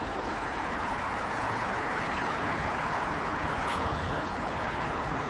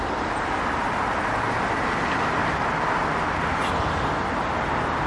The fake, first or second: first